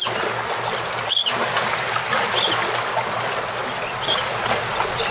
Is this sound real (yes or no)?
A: yes